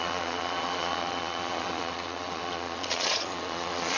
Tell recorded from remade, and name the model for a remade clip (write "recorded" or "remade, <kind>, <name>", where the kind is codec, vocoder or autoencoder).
remade, vocoder, Vocos